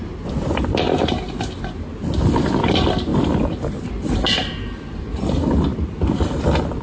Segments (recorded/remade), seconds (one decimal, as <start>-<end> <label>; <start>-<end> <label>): 0.0-2.4 recorded; 2.4-5.7 remade; 5.7-6.8 recorded